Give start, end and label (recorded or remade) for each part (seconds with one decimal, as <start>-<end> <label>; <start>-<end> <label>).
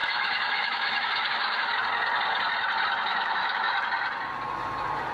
0.0-1.7 remade; 1.7-3.1 recorded; 3.1-3.7 remade; 3.7-5.1 recorded